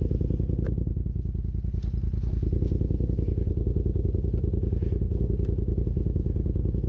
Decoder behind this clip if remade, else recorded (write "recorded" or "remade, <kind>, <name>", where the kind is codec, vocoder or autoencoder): recorded